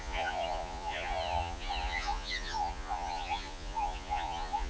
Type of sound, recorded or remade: remade